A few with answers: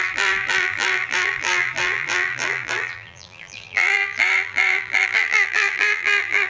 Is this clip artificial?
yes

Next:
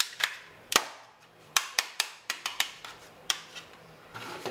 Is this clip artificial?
yes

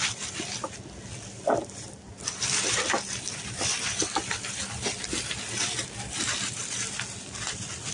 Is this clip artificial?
yes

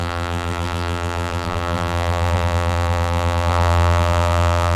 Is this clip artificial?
yes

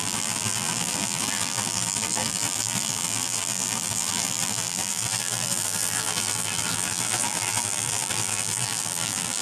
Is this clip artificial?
yes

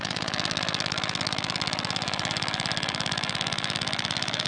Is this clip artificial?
yes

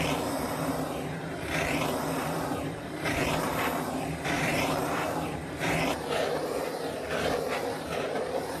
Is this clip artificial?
yes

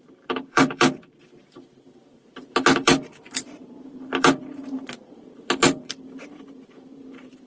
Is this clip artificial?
yes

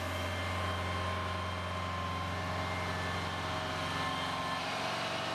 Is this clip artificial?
no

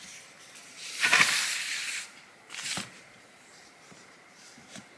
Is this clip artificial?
yes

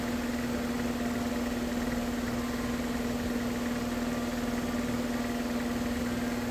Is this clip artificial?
no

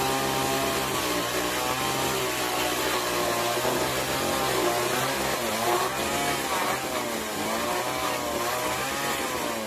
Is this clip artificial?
no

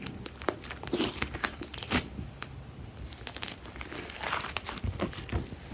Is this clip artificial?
no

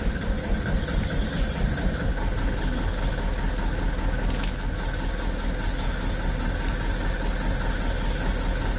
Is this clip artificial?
no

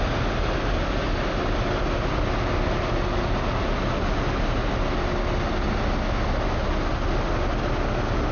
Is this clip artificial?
no